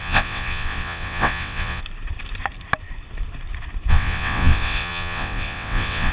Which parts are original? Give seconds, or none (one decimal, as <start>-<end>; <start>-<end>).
1.8-3.9